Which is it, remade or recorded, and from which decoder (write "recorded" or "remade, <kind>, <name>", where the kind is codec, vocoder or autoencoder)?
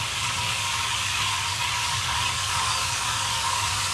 remade, codec, DAC